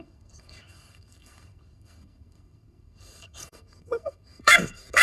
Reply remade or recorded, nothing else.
remade